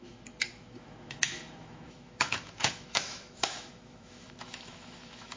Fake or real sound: fake